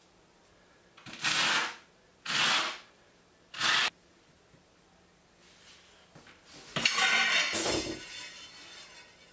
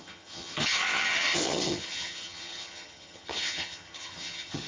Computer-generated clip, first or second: second